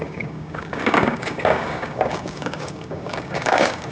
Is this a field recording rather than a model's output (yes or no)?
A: no